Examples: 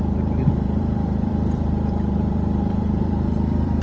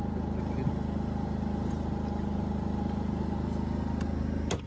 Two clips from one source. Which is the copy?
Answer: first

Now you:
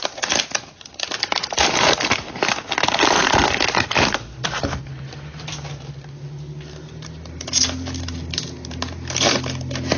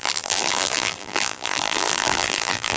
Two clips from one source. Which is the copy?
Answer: second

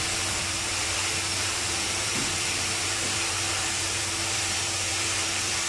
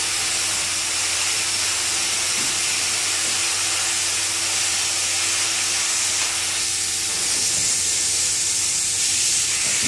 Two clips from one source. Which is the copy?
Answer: first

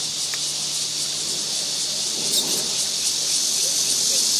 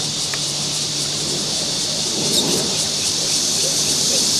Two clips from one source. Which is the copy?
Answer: second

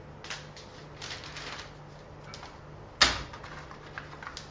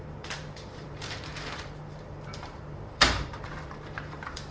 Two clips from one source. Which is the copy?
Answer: second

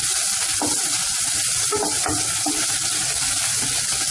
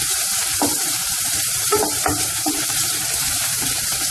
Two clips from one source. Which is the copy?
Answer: second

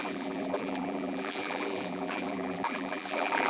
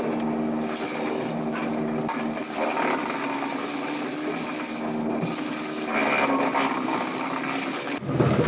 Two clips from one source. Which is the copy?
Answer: first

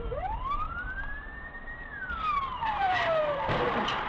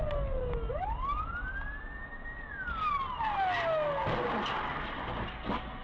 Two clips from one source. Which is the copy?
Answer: first